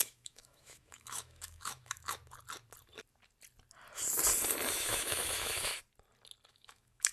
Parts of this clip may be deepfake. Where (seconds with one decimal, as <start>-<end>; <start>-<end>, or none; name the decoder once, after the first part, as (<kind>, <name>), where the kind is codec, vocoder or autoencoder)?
0.0-2.2 (autoencoder, DAC-VAE); 4.7-5.7; 6.5-7.1